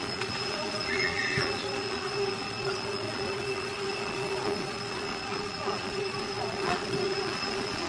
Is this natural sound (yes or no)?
no